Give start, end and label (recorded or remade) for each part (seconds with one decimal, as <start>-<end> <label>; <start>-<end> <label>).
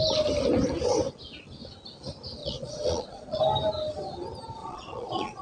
0.0-2.4 recorded; 2.4-3.4 remade; 3.4-4.6 recorded; 4.6-5.4 remade